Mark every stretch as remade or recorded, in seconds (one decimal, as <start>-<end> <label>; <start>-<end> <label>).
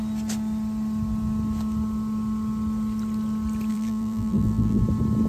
0.0-3.7 recorded; 3.7-4.8 remade; 4.8-5.3 recorded